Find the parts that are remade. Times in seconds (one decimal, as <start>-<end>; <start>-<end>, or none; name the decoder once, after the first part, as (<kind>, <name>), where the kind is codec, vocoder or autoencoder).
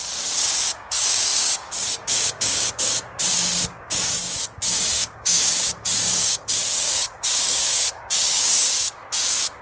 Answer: 0.0-9.6 (codec, DAC)